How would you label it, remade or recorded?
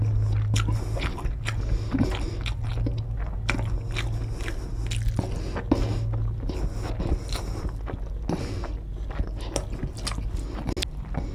recorded